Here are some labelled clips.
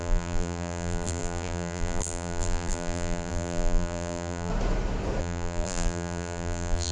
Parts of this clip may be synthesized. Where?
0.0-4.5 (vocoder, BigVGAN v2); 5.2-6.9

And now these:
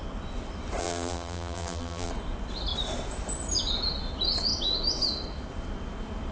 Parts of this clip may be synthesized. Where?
0.8-2.1 (vocoder, BigVGAN v2)

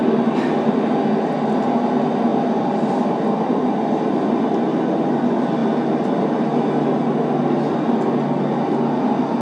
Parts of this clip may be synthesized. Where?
2.3-3.7 (vocoder, BigVGAN v2)

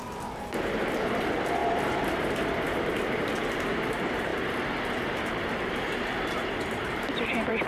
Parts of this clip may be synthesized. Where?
0.0-4.3 (vocoder, BigVGAN v2); 5.7-7.7

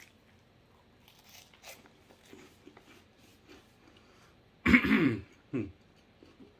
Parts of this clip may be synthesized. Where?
3.3-6.6 (vocoder, BigVGAN v2)

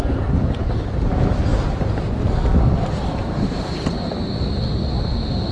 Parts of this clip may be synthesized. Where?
0.6-1.1 (vocoder, BigVGAN v2); 1.5-4.1

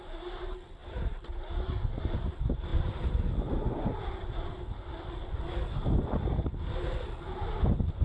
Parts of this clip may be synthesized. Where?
0.8-1.7 (vocoder, BigVGAN v2)